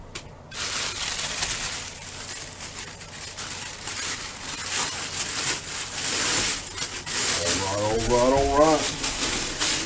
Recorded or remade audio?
recorded